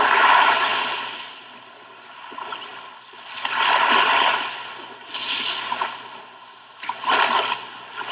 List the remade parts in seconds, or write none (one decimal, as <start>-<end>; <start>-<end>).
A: 5.0-5.9